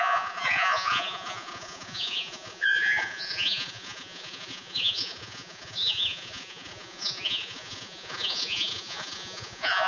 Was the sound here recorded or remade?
remade